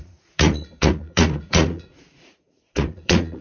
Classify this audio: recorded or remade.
remade